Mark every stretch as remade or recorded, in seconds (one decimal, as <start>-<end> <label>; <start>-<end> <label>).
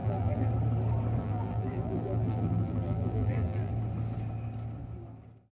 0.0-0.5 remade; 0.5-1.2 recorded; 1.2-3.7 remade; 3.7-5.6 recorded